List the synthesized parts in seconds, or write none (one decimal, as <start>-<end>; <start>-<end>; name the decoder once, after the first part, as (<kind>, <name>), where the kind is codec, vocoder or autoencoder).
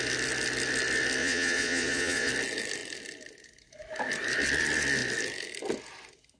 1.2-2.3 (vocoder, Vocos)